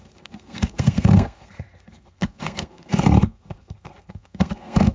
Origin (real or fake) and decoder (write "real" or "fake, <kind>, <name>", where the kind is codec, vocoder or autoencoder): fake, codec, SNAC